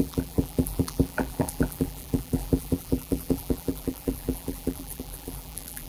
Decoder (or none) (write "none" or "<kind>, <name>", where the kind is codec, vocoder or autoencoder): vocoder, BigVGAN v2